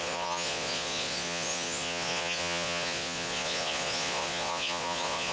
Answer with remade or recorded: remade